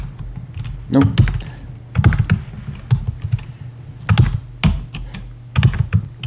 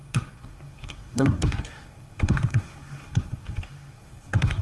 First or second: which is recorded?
first